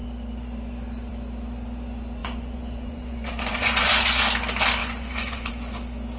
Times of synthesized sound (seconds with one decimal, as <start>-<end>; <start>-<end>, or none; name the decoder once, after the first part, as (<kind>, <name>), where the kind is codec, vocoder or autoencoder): 2.2-4.2 (vocoder, Vocos); 4.8-5.5